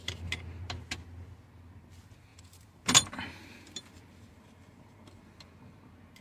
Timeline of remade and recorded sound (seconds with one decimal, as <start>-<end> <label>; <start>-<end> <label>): 0.0-6.2 recorded